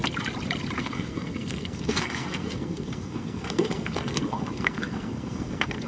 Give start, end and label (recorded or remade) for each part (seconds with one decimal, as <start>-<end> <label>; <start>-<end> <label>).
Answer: 0.0-0.8 recorded; 0.8-5.9 remade